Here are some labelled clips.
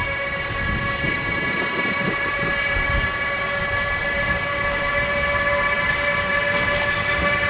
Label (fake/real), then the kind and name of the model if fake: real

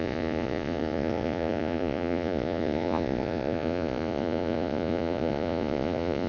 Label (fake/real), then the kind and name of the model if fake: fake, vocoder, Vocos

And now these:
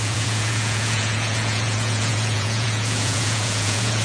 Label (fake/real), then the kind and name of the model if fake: fake, vocoder, Vocos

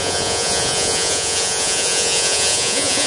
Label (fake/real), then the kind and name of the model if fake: fake, vocoder, Vocos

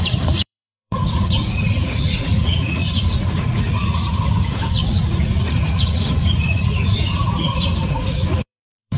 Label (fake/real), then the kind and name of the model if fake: fake, vocoder, Vocos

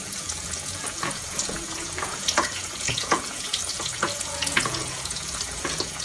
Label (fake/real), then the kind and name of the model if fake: fake, vocoder, Vocos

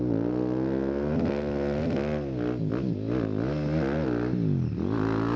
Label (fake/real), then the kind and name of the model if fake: real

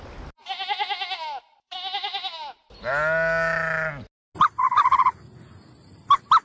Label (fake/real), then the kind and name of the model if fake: real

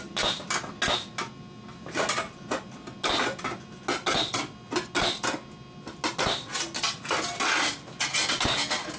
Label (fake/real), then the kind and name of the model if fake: real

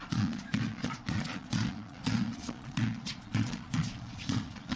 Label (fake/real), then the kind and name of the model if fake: fake, vocoder, Vocos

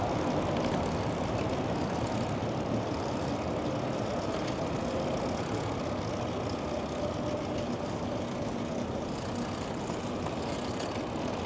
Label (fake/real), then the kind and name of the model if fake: real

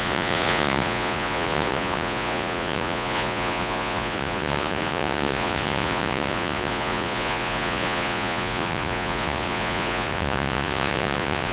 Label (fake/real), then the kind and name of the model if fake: fake, vocoder, Vocos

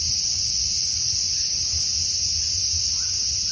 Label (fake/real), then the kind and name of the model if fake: real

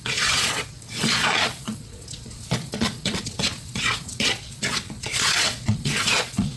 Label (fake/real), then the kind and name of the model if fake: fake, vocoder, Vocos